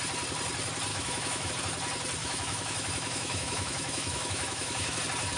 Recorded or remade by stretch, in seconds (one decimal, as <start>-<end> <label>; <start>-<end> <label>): 0.0-0.9 recorded; 0.9-1.5 remade; 1.5-2.2 recorded; 2.2-5.0 remade; 5.0-5.4 recorded